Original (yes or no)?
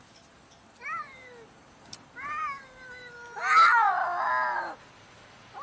yes